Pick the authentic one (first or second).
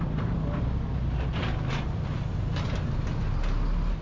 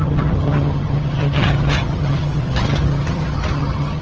first